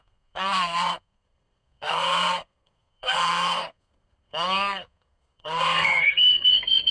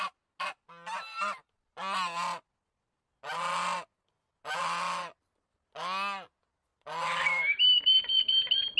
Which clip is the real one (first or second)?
second